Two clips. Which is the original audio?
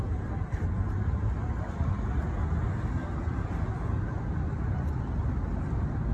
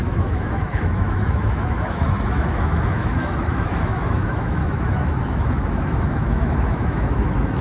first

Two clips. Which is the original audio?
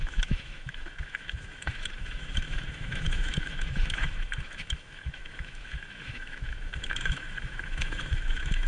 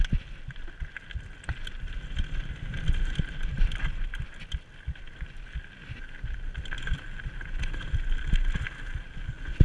second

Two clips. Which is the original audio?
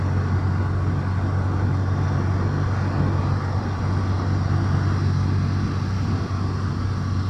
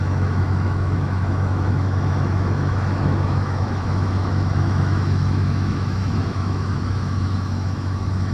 first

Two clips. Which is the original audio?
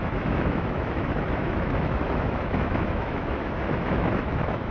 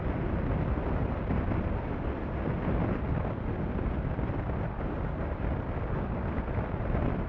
second